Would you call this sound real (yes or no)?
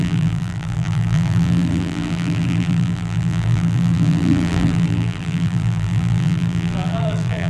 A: no